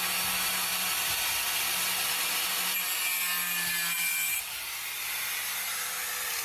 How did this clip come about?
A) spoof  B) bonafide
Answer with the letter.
B